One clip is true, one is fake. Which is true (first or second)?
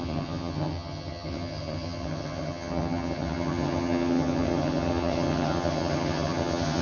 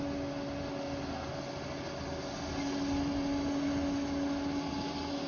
second